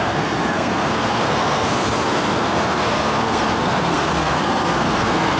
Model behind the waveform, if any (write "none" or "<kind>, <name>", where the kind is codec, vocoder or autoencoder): codec, SNAC